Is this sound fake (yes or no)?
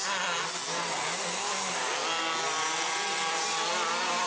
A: no